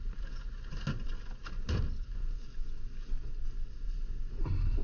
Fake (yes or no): no